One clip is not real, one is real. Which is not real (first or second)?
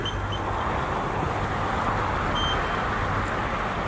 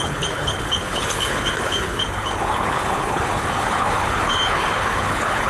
second